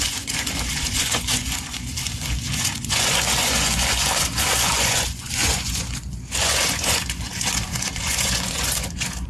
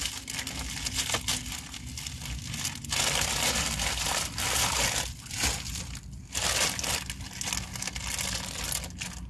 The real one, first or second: second